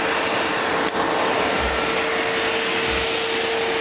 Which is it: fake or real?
real